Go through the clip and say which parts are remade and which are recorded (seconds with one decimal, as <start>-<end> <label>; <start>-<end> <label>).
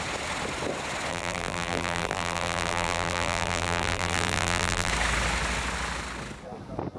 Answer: 0.0-1.1 recorded; 1.1-4.9 remade; 4.9-7.0 recorded